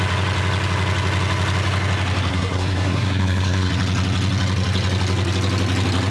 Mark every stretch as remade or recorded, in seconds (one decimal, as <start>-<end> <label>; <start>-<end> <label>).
0.0-2.3 recorded; 2.3-3.7 remade; 3.7-6.1 recorded